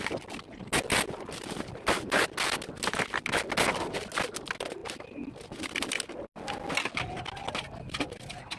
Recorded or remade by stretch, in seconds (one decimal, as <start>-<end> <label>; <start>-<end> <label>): 0.0-8.6 recorded